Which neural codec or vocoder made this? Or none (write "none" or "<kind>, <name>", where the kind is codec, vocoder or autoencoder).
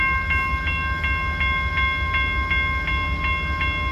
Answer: none